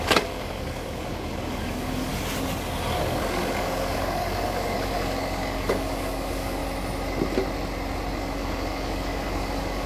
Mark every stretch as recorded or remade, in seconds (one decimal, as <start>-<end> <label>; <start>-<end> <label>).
0.0-2.1 remade; 2.1-3.0 recorded; 3.0-6.6 remade; 6.6-8.1 recorded; 8.1-9.9 remade